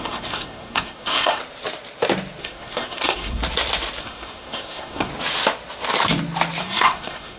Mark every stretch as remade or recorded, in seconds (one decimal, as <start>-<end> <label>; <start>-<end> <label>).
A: 0.0-1.4 remade; 1.4-2.4 recorded; 2.4-3.4 remade; 3.4-4.0 recorded; 4.0-5.1 remade; 5.1-6.6 recorded; 6.6-7.4 remade